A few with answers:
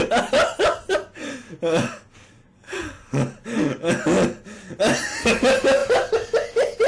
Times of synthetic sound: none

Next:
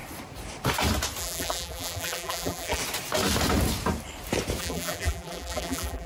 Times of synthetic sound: 1.2-2.8 (vocoder, BigVGAN v2); 4.6-6.1

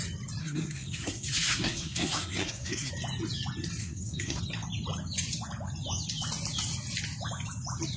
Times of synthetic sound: 0.4-2.9 (codec, SNAC); 3.8-4.4

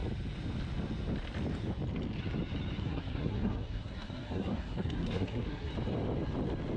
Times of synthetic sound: 2.8-5.7 (codec, SNAC)

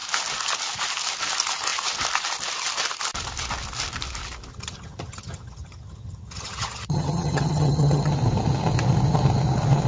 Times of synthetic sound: 4.5-8.1 (vocoder, HiFi-GAN)